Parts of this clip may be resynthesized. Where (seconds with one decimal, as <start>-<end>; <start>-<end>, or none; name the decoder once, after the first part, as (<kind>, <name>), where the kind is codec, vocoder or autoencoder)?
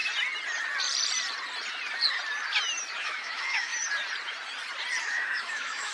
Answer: 3.0-3.7 (autoencoder, DAC-VAE); 5.0-5.9